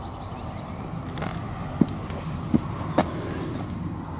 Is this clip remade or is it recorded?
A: recorded